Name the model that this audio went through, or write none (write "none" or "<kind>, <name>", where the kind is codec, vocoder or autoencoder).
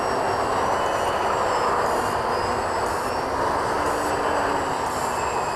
none